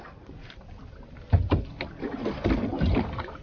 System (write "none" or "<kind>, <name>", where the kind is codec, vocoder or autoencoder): none